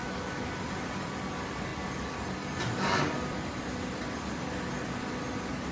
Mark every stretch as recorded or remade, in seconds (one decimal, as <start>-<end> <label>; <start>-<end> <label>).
0.0-0.5 remade; 0.5-5.7 recorded